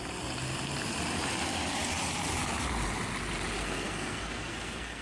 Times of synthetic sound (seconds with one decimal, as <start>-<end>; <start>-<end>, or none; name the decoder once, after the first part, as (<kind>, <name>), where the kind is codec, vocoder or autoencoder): 3.6-5.0 (codec, SNAC)